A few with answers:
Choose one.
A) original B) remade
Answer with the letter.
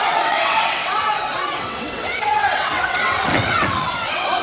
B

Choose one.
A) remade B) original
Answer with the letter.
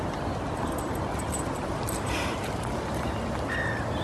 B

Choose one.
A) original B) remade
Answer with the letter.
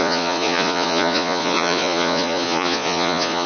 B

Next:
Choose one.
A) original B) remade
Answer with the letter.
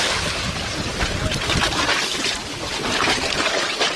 A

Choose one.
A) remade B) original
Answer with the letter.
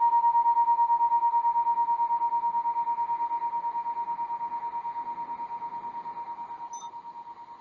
B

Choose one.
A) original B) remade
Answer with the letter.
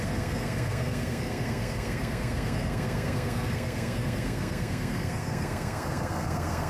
B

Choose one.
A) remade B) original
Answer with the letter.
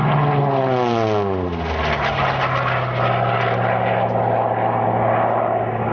B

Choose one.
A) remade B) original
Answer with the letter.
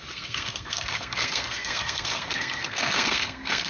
A